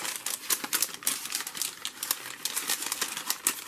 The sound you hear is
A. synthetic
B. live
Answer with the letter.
B